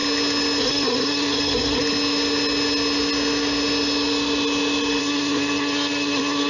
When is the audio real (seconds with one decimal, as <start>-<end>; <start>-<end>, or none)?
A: 0.0-0.6; 1.8-5.0